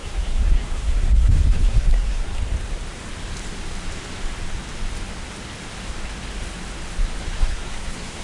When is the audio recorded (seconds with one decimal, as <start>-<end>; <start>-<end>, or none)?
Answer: 2.4-7.2